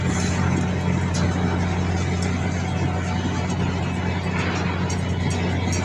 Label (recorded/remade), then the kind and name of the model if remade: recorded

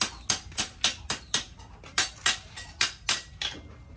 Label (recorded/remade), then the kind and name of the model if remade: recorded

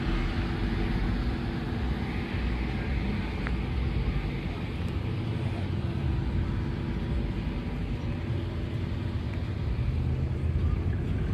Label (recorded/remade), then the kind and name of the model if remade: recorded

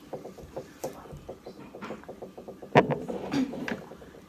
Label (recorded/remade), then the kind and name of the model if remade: remade, vocoder, BigVGAN v2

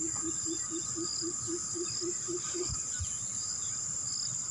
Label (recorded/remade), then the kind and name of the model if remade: recorded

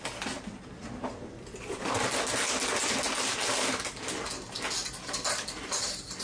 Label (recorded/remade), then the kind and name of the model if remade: recorded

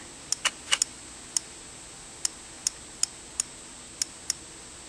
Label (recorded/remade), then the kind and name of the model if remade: recorded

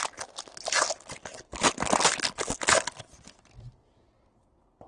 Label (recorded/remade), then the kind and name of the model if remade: recorded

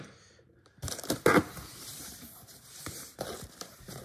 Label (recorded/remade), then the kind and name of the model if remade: remade, vocoder, BigVGAN v2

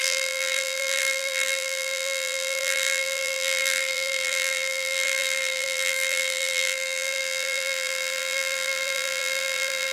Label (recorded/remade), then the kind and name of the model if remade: remade, vocoder, BigVGAN v2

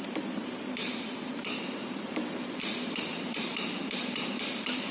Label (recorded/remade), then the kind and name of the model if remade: remade, vocoder, BigVGAN v2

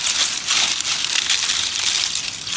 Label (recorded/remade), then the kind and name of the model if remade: recorded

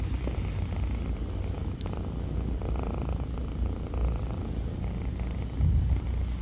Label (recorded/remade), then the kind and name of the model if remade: recorded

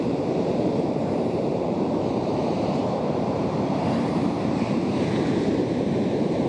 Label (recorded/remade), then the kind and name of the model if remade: remade, vocoder, BigVGAN v2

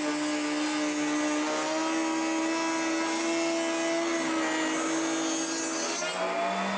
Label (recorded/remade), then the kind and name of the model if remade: recorded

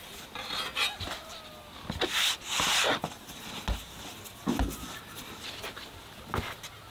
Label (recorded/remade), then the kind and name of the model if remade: recorded